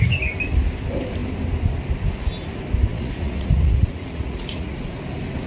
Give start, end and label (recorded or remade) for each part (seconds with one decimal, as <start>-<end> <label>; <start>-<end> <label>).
0.0-2.9 recorded; 2.9-4.9 remade; 4.9-5.5 recorded